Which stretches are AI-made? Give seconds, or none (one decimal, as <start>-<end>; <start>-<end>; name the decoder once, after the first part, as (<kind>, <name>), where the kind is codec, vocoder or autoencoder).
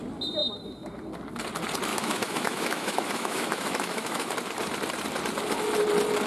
1.9-4.3 (autoencoder, DAC-VAE)